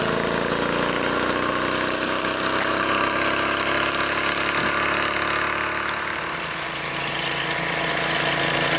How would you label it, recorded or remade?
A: recorded